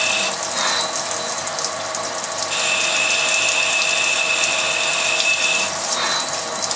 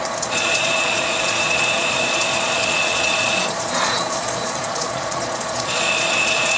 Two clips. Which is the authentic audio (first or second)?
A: first